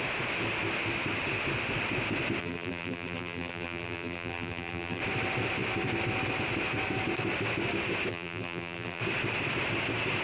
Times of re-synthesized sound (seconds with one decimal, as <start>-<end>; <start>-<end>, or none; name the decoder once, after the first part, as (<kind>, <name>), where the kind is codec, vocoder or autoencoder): 2.4-5.0 (vocoder, BigVGAN v2); 8.1-9.0